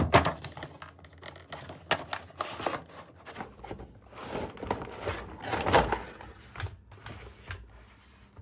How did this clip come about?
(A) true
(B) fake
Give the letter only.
A